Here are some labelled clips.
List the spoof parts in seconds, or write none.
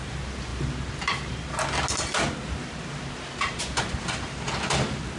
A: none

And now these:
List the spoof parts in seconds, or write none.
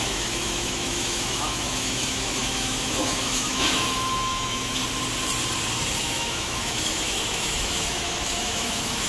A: 0.0-4.8 (autoencoder, DAC-VAE); 6.0-9.1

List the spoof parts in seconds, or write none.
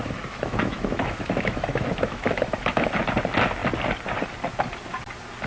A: 0.0-2.9 (autoencoder, DAC-VAE)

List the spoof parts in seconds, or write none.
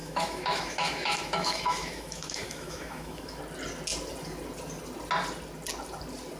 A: 0.0-3.4 (autoencoder, DAC-VAE)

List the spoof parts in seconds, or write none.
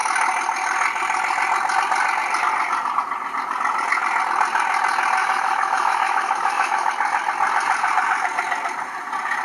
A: 5.2-6.9 (autoencoder, DAC-VAE)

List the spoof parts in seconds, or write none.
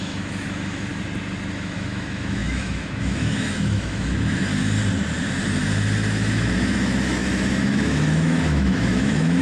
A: 0.0-0.9 (autoencoder, DAC-VAE); 1.5-4.5; 6.1-9.4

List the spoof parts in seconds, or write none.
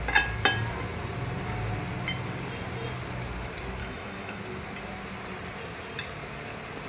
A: 3.8-4.4 (autoencoder, DAC-VAE)